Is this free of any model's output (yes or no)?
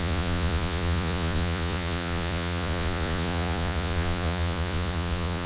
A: no